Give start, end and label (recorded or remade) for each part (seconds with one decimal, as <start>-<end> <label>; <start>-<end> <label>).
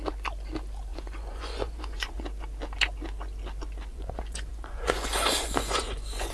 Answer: 0.0-0.9 recorded; 0.9-2.2 remade; 2.2-3.9 recorded; 3.9-6.3 remade